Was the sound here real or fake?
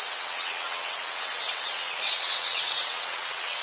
fake